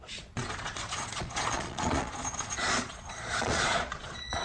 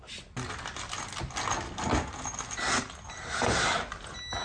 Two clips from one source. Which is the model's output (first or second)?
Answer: first